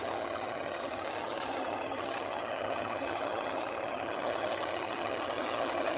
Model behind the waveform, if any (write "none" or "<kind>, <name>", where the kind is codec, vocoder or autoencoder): vocoder, HiFi-GAN